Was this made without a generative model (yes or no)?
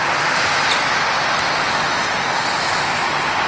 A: yes